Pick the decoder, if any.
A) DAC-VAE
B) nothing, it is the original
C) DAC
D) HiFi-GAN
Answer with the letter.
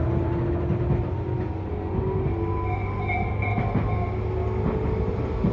B